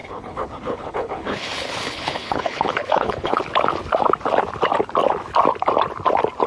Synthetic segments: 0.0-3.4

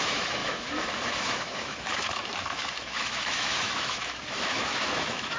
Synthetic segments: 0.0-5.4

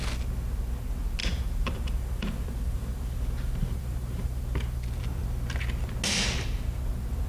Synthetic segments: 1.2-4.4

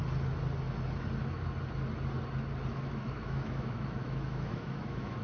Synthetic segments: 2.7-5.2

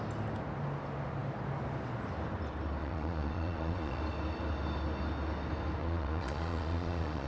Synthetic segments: 2.8-4.0; 5.8-7.3

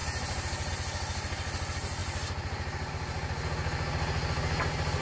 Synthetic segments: 0.0-0.7; 2.0-2.9

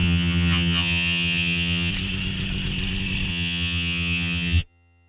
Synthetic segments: 0.0-1.9; 3.3-5.1

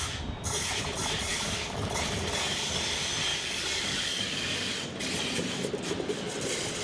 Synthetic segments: 1.3-1.9; 3.3-4.7